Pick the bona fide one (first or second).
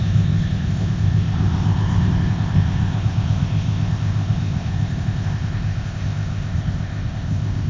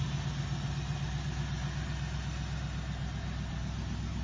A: second